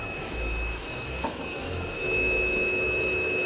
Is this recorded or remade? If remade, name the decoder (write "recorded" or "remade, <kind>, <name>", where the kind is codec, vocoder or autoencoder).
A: remade, autoencoder, DAC-VAE